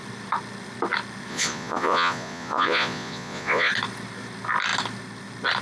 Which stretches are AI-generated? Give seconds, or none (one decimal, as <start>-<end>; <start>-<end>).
1.3-3.7